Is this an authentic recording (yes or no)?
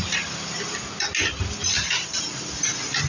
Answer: yes